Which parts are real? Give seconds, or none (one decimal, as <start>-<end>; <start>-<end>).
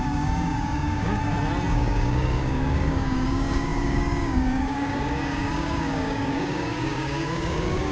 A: 1.2-1.7